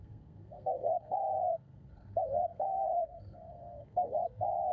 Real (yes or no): no